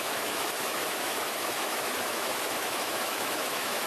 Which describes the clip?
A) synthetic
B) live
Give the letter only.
A